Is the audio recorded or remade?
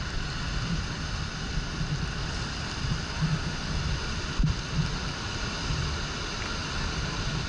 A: recorded